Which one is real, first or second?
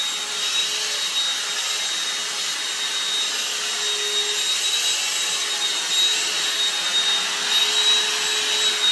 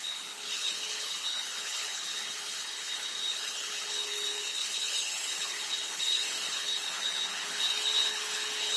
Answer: first